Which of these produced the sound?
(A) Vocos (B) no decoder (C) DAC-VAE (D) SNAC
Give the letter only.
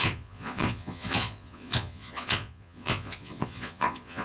A